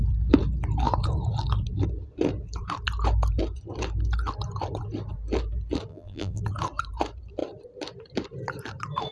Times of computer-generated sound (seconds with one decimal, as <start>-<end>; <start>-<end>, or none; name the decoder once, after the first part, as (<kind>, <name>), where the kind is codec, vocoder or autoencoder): 5.9-6.4 (vocoder, BigVGAN v2)